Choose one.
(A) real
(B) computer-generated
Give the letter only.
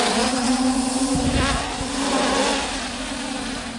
A